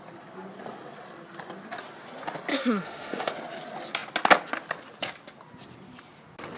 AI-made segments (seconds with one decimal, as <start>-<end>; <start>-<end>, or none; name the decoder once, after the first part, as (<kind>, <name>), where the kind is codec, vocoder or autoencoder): 2.5-3.3 (autoencoder, DAC-VAE)